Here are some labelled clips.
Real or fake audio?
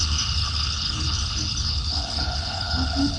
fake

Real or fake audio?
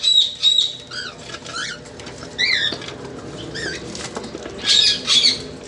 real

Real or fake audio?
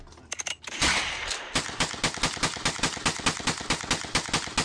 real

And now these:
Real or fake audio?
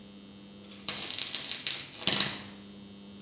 real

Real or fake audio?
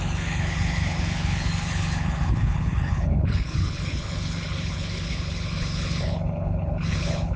fake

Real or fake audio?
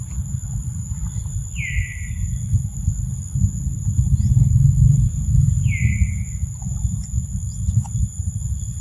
real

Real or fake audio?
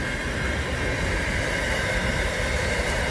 real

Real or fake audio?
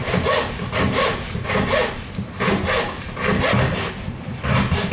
real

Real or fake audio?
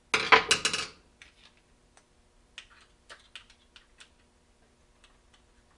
real